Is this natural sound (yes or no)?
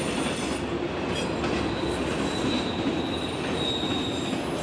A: no